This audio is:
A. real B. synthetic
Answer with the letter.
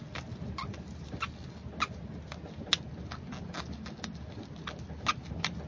A